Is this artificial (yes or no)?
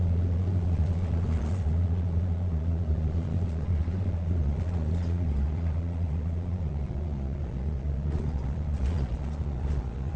yes